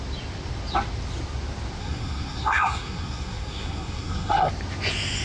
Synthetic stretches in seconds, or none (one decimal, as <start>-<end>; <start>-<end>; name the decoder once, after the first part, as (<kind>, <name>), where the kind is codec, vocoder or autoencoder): 1.8-4.5 (codec, SNAC)